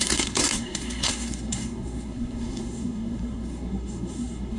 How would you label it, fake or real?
fake